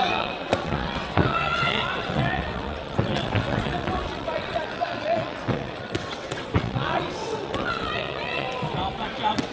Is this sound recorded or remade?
remade